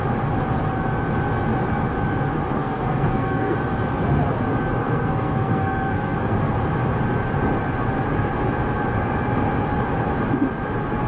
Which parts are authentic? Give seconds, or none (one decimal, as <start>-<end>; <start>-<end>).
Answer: 0.0-2.5; 3.6-4.8; 6.4-11.1